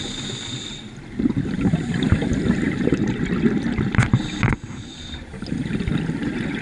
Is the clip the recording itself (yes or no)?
yes